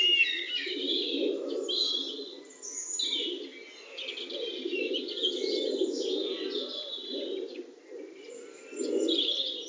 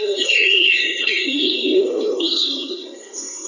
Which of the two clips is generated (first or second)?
second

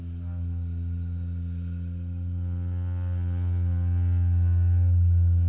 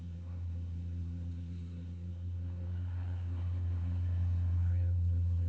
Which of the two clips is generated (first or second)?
second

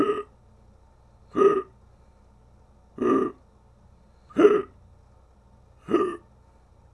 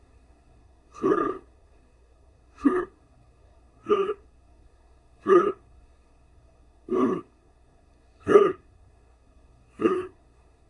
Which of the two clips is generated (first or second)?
second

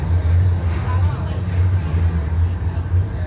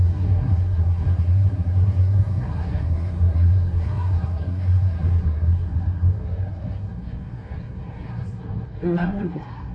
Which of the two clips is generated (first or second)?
second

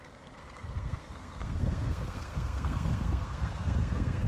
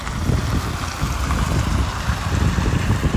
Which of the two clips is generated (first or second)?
first